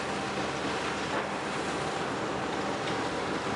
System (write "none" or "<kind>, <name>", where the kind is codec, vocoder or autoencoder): none